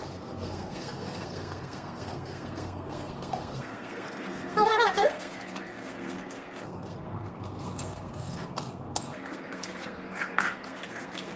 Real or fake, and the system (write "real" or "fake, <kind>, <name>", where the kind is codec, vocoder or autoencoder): fake, codec, SNAC